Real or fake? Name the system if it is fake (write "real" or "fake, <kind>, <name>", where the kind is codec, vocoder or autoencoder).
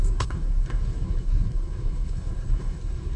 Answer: fake, codec, SNAC